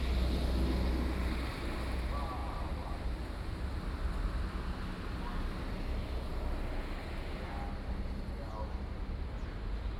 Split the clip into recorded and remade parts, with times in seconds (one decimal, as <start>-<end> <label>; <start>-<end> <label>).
0.0-2.4 recorded; 2.4-4.6 remade; 4.6-10.0 recorded